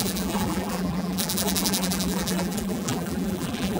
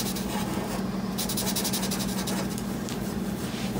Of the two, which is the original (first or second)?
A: second